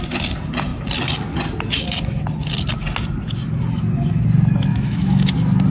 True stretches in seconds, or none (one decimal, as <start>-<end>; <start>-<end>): 0.0-4.7; 5.3-5.7

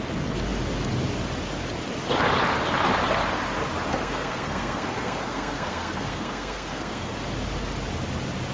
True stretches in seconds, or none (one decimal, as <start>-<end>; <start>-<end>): 0.0-3.9; 7.2-8.5

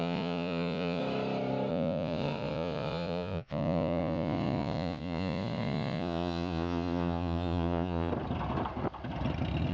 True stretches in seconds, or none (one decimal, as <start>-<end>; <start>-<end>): 1.0-1.7; 8.1-9.7